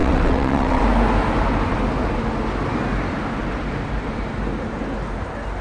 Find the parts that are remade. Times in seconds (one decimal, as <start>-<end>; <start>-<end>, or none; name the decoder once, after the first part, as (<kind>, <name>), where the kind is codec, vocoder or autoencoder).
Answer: 0.0-0.8 (vocoder, WaveNeXt)